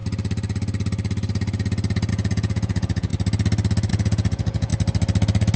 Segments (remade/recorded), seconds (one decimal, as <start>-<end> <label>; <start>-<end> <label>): 0.0-2.1 recorded; 2.1-3.1 remade; 3.1-3.9 recorded; 3.9-4.7 remade; 4.7-5.6 recorded